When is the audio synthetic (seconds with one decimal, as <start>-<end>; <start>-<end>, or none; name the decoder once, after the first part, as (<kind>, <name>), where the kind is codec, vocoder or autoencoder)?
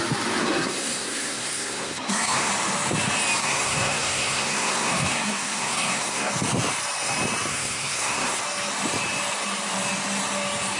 0.4-2.5 (codec, SNAC); 3.4-6.3; 7.5-8.4